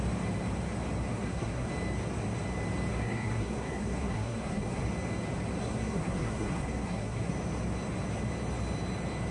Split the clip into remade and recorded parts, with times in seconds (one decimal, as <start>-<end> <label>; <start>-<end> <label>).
0.0-1.1 recorded; 1.1-1.7 remade; 1.7-2.9 recorded; 2.9-4.8 remade; 4.8-5.6 recorded; 5.6-7.3 remade; 7.3-9.3 recorded